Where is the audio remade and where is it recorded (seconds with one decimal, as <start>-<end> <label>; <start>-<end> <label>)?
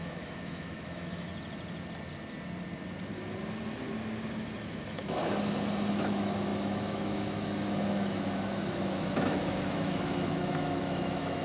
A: 0.0-1.3 remade; 1.3-4.6 recorded; 4.6-5.2 remade; 5.2-5.9 recorded; 5.9-11.4 remade